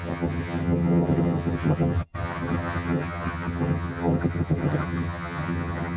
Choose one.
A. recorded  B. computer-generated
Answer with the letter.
B